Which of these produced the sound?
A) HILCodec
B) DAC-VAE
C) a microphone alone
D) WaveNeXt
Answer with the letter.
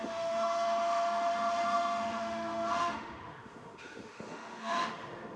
B